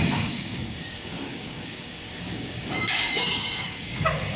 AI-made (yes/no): yes